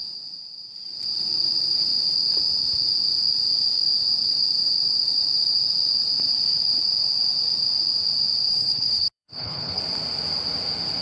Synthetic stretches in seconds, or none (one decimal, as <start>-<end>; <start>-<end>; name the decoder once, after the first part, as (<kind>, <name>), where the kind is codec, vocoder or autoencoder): 8.5-9.8 (codec, HILCodec)